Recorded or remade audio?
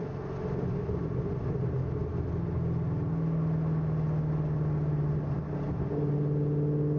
recorded